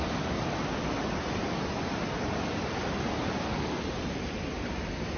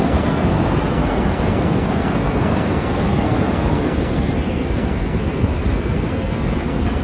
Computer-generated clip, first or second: second